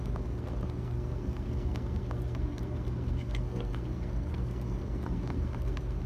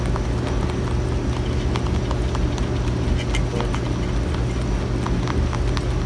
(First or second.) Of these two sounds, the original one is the second